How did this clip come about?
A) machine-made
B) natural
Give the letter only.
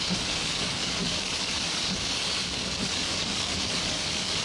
A